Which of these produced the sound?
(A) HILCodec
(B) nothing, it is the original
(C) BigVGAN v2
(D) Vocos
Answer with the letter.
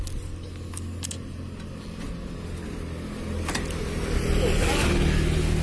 B